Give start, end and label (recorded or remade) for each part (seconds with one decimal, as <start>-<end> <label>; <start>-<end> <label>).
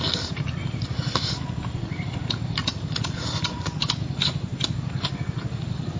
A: 0.0-2.6 recorded; 2.6-3.2 remade; 3.2-4.5 recorded; 4.5-6.0 remade